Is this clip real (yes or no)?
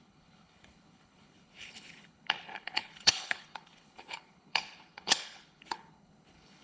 no